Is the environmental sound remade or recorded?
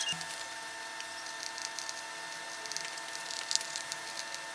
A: recorded